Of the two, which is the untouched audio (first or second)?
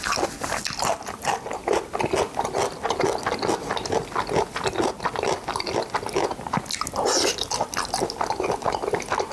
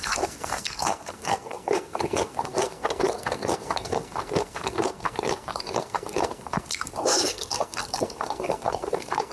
first